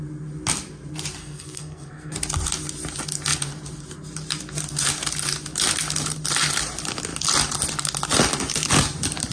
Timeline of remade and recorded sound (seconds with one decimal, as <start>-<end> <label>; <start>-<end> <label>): 0.0-1.2 recorded; 1.2-2.1 remade; 2.1-9.3 recorded